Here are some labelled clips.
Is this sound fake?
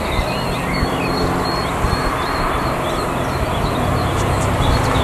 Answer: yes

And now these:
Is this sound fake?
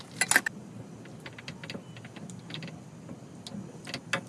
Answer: no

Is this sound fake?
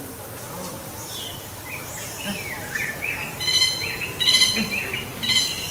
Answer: no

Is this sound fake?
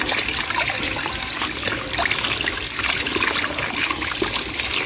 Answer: no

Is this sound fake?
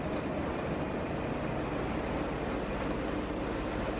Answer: no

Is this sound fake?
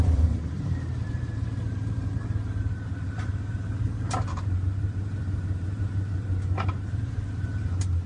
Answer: yes